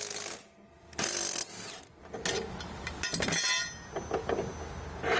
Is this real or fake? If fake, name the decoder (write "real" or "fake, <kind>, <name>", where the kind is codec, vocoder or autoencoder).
real